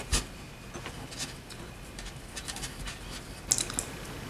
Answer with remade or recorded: recorded